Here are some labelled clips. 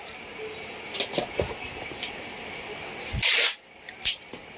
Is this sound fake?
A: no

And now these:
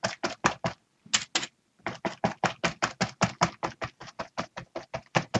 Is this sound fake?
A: no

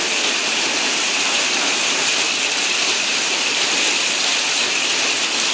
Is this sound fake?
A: no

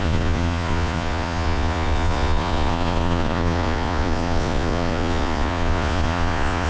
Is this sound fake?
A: yes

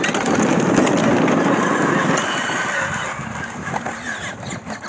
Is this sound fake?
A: no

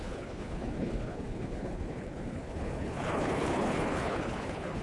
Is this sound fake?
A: yes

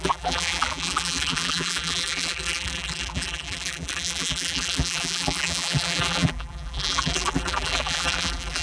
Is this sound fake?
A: yes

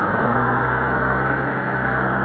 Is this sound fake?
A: yes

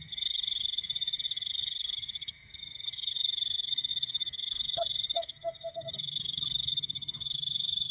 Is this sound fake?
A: yes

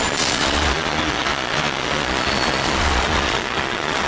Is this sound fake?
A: yes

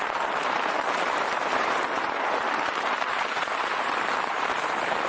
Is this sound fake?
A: yes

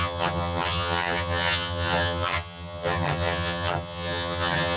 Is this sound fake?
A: yes